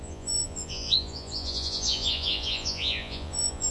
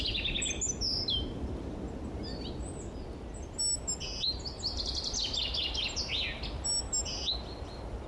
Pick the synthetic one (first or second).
first